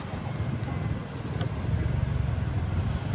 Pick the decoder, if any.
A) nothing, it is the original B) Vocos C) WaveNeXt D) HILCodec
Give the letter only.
A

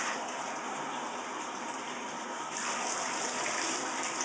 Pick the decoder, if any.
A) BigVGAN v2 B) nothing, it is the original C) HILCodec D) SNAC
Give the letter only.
B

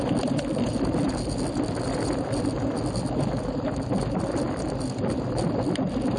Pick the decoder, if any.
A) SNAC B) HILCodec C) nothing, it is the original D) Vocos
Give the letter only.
C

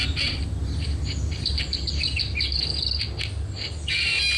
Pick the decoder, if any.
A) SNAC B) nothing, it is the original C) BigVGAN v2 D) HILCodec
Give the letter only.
B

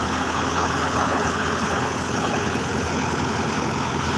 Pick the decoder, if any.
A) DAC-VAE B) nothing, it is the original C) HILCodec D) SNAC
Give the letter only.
C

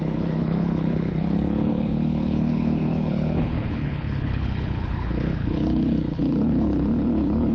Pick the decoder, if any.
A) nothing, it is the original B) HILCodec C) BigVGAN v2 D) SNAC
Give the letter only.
B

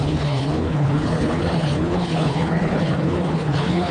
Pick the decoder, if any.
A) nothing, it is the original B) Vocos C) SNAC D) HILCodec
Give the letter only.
D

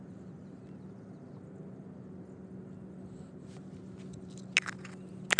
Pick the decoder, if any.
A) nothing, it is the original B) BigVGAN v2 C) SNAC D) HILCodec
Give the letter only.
A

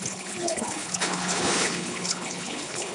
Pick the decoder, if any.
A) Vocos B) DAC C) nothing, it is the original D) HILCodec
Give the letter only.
D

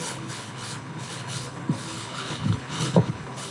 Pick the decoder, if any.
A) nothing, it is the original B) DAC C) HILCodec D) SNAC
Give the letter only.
C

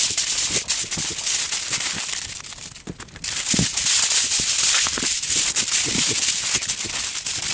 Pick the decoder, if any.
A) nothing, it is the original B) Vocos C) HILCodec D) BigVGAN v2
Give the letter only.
A